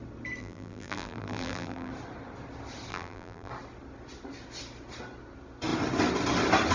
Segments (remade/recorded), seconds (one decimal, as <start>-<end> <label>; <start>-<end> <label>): 0.0-0.4 recorded; 0.4-1.9 remade; 1.9-2.9 recorded; 2.9-3.5 remade; 3.5-6.7 recorded